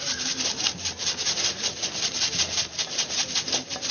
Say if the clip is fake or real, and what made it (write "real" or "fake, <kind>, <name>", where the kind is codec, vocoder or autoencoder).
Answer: fake, vocoder, BigVGAN v2